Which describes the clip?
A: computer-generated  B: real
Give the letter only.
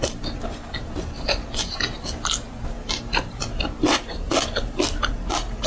B